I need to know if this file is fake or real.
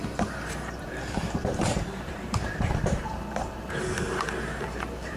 fake